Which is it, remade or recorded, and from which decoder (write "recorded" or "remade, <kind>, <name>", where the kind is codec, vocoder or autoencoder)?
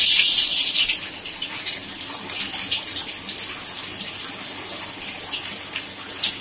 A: recorded